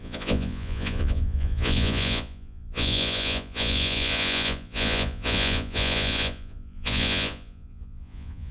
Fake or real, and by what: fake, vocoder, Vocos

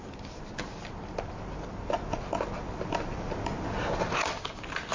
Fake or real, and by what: real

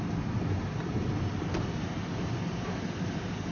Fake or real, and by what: real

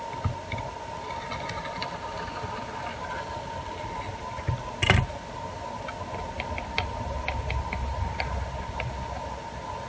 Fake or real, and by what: real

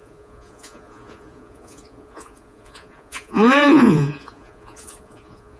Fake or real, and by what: fake, vocoder, Vocos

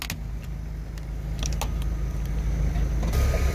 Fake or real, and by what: real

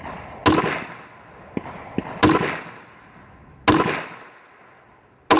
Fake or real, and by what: real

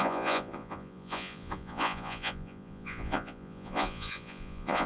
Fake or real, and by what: fake, vocoder, Vocos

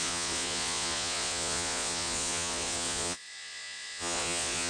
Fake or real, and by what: fake, vocoder, Vocos